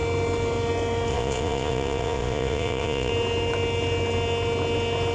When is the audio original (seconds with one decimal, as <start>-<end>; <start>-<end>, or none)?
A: 0.0-1.1; 3.1-5.1